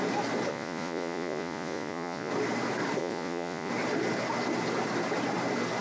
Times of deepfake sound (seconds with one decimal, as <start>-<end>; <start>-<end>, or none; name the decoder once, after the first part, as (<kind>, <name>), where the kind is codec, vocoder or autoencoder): 0.5-2.3 (vocoder, Vocos); 3.0-3.7